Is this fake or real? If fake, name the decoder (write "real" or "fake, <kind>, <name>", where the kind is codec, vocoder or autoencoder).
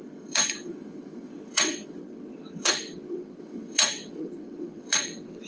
fake, vocoder, WaveNeXt